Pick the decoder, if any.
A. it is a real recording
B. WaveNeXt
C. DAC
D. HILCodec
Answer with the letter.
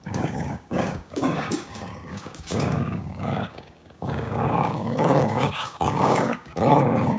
C